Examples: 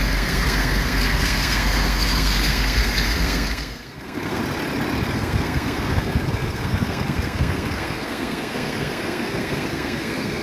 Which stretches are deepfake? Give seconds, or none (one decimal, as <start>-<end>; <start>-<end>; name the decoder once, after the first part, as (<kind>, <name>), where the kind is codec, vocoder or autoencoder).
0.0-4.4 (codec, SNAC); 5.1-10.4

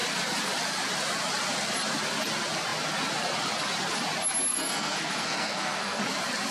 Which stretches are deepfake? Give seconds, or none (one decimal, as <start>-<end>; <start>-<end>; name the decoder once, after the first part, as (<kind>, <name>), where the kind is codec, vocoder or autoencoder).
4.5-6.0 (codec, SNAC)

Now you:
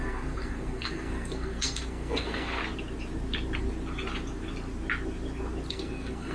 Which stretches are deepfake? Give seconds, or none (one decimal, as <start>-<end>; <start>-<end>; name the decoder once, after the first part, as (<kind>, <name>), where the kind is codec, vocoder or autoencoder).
0.0-2.6 (codec, SNAC); 5.7-6.3

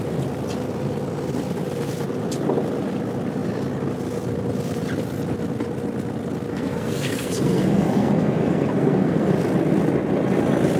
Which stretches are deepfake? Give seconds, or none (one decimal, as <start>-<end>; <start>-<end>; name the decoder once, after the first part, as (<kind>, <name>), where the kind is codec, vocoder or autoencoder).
6.5-9.3 (codec, SNAC)